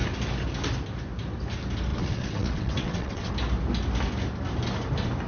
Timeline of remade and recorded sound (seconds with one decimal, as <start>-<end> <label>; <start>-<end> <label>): 0.0-1.9 recorded; 1.9-3.3 remade; 3.3-5.3 recorded